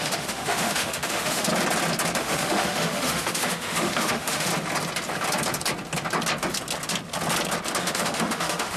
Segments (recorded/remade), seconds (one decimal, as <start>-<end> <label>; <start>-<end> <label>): 0.0-1.5 remade; 1.5-2.2 recorded; 2.2-4.5 remade; 4.5-7.8 recorded; 7.8-8.8 remade